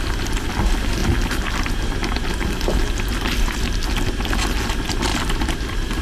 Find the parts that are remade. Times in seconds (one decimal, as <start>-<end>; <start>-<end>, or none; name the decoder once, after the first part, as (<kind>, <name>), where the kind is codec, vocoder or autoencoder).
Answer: 5.1-6.0 (vocoder, BigVGAN v2)